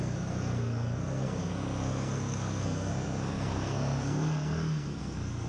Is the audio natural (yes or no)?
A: no